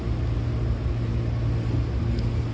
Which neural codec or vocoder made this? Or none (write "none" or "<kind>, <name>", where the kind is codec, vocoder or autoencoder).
none